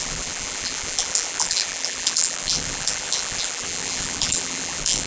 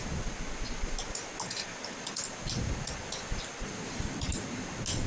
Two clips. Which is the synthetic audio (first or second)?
first